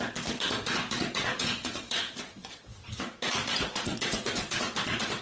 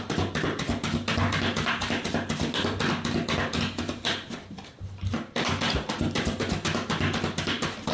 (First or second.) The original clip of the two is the second